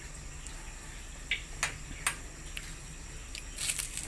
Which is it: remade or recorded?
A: recorded